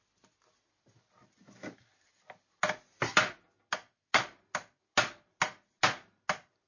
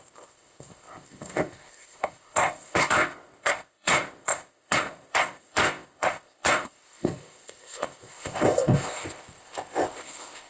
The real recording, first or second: first